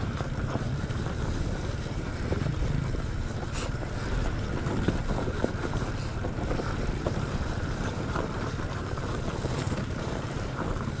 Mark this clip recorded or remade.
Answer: remade